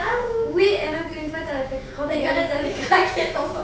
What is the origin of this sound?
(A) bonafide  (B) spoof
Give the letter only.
B